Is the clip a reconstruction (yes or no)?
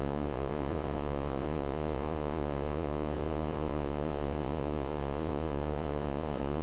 yes